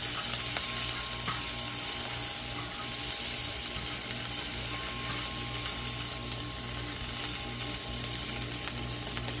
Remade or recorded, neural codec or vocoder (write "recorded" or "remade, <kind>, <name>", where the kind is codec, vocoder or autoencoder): recorded